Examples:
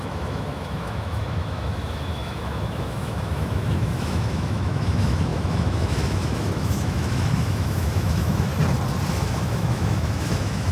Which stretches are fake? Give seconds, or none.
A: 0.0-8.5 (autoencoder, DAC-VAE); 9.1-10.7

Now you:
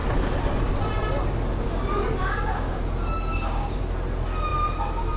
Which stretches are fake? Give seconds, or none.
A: 2.2-3.8 (codec, DAC)